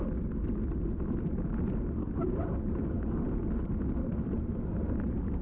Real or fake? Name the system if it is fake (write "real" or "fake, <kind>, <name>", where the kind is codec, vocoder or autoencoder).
real